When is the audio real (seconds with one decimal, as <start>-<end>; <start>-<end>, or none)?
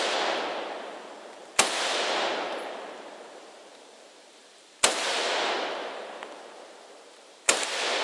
none